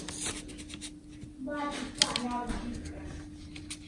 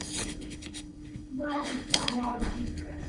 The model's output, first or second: second